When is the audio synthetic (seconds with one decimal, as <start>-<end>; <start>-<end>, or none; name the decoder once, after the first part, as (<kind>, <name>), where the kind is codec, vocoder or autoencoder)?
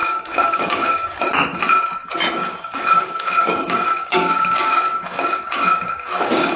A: 0.0-1.2 (codec, DAC); 2.4-6.6